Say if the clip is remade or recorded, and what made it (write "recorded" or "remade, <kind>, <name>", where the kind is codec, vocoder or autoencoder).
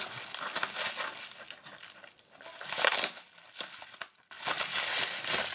recorded